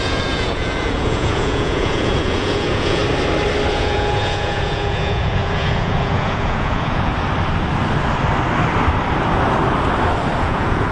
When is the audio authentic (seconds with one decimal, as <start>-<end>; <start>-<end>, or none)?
3.0-3.7; 7.1-10.4